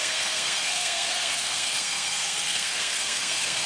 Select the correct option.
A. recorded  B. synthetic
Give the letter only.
B